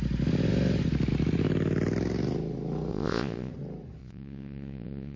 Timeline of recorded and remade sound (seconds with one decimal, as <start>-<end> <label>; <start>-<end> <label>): 0.0-2.9 recorded; 2.9-3.5 remade; 3.5-4.0 recorded; 4.0-5.2 remade